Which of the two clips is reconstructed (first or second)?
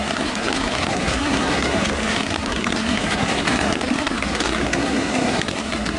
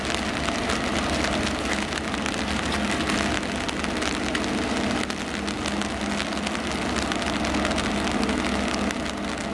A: first